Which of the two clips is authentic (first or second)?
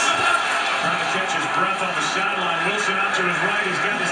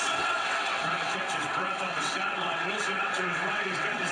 first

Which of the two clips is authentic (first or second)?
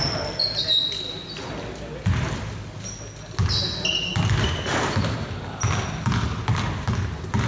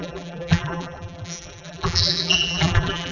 first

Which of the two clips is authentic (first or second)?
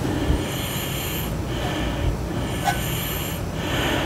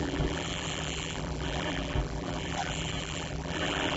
first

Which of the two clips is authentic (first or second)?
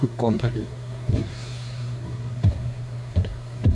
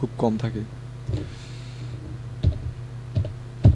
second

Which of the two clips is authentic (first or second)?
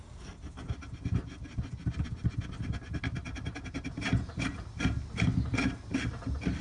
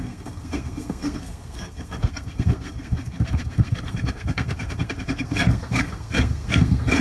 first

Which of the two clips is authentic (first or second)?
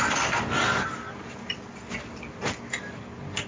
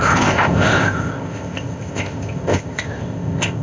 first